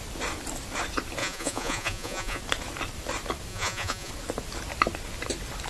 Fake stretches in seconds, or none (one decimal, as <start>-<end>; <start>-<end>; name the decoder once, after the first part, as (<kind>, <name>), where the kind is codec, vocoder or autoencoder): 1.2-2.4 (vocoder, Vocos); 3.5-4.1